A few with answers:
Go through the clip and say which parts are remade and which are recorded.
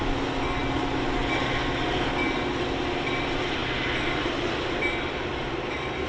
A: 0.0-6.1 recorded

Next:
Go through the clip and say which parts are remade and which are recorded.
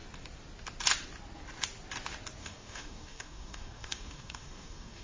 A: 0.0-2.4 recorded; 2.4-5.0 remade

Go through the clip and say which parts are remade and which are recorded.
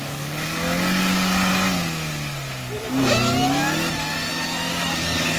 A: 0.0-1.5 remade; 1.5-4.7 recorded; 4.7-5.4 remade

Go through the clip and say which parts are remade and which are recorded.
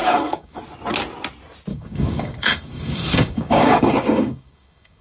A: 0.0-0.6 remade; 0.6-1.7 recorded; 1.7-5.0 remade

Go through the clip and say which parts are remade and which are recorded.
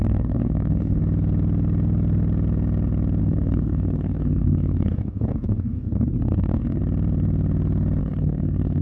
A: 0.0-1.0 remade; 1.0-3.2 recorded; 3.2-6.8 remade; 6.8-8.0 recorded; 8.0-8.8 remade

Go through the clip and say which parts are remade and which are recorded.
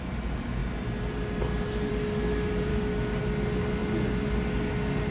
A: 0.0-2.7 recorded; 2.7-3.2 remade; 3.2-5.1 recorded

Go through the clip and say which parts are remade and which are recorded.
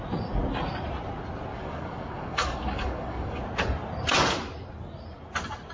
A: 0.0-1.5 recorded; 1.5-3.4 remade; 3.4-5.7 recorded